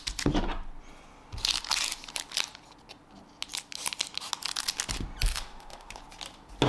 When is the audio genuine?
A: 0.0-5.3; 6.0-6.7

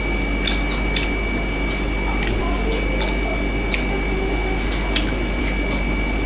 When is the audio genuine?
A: 0.0-6.3